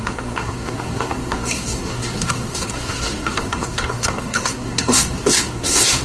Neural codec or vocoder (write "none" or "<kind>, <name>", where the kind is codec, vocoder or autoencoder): codec, SNAC